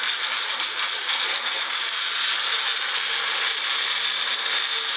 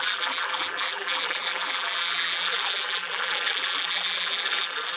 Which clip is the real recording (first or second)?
first